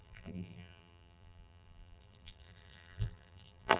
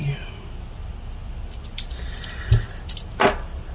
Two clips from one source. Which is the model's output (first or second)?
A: first